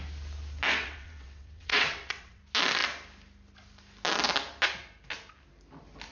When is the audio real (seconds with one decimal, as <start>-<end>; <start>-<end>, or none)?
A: 0.0-0.8; 2.4-6.1